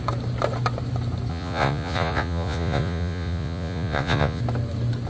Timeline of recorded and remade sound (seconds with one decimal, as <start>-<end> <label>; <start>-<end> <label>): 0.0-1.3 recorded; 1.3-4.4 remade; 4.4-5.1 recorded

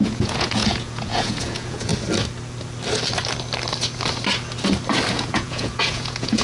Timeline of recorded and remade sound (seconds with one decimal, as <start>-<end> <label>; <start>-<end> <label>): 0.0-1.9 remade; 1.9-5.1 recorded; 5.1-6.4 remade

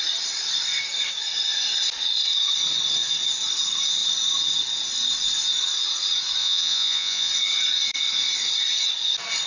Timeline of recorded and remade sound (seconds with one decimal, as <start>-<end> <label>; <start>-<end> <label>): 0.0-6.4 recorded; 6.4-7.3 remade; 7.3-9.5 recorded

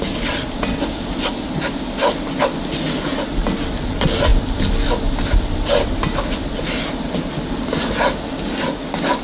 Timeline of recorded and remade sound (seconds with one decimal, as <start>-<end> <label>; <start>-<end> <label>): 0.0-9.2 recorded

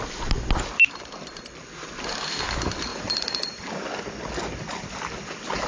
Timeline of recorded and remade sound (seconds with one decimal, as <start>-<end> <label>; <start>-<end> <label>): 0.0-2.9 recorded; 2.9-3.6 remade; 3.6-5.7 recorded